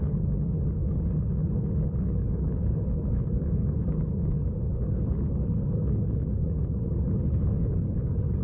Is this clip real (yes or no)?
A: no